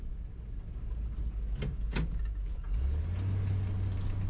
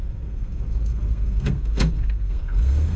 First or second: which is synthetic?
second